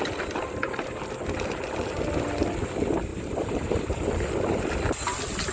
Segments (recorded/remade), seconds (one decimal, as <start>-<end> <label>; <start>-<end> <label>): 0.0-3.1 recorded; 3.1-4.1 remade; 4.1-5.5 recorded